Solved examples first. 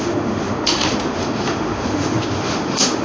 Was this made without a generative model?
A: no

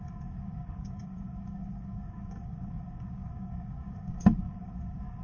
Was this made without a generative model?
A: no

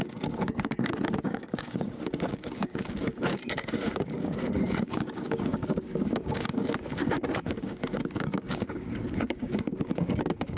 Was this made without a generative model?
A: no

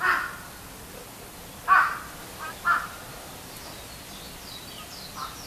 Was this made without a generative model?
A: yes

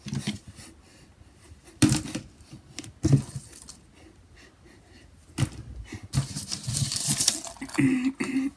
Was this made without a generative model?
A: yes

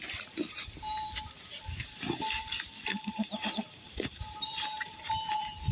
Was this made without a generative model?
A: no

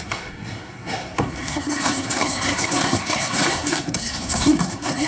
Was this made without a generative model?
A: no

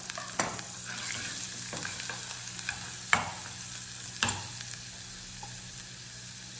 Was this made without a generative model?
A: yes